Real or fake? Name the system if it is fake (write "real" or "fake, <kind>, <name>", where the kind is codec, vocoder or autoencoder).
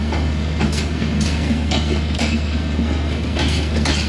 fake, codec, SNAC